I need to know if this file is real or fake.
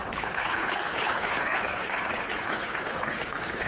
fake